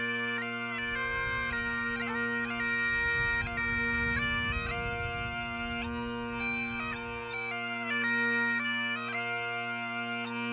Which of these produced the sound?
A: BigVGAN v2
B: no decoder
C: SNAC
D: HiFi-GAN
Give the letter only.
B